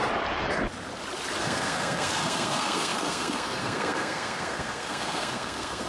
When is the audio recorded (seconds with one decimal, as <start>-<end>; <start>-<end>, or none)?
0.0-1.4